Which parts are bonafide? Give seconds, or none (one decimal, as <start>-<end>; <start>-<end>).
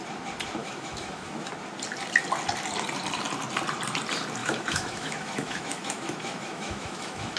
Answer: 0.0-0.6; 1.5-4.4